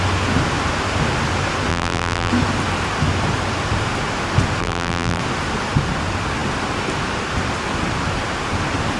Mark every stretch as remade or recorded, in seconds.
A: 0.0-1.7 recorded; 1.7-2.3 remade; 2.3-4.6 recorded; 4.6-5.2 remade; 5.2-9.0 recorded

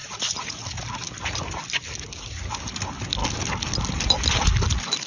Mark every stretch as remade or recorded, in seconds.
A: 0.0-0.5 remade; 0.5-5.1 recorded

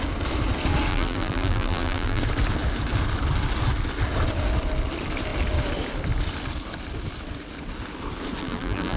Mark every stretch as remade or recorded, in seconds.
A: 0.0-0.9 recorded; 0.9-2.2 remade; 2.2-8.4 recorded; 8.4-9.0 remade

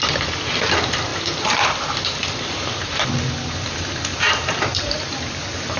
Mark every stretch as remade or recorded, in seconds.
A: 0.0-1.1 recorded; 1.1-3.1 remade; 3.1-4.1 recorded; 4.1-5.8 remade

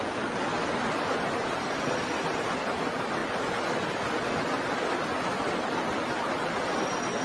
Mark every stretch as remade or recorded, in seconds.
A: 0.0-7.2 recorded